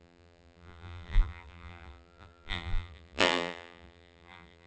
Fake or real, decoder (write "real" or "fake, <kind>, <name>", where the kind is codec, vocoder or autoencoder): fake, vocoder, BigVGAN v2